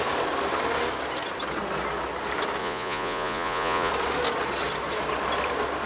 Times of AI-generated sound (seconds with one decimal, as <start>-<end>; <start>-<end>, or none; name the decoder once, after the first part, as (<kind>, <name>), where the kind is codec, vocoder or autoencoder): 2.6-3.9 (vocoder, Vocos)